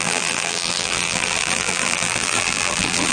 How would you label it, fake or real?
fake